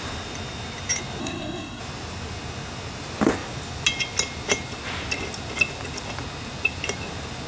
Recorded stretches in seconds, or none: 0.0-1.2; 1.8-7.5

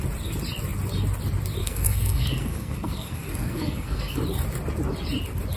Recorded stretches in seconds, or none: 0.0-1.6; 4.2-5.6

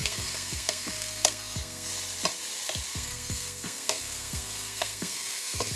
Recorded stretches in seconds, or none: 1.9-2.9

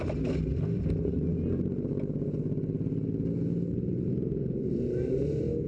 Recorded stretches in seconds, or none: 0.0-5.7